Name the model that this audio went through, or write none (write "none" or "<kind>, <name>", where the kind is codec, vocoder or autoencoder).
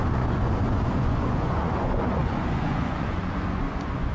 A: vocoder, Vocos